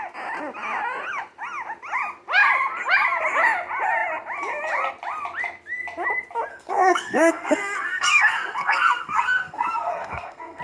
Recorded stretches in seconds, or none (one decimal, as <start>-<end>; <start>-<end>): 0.0-6.5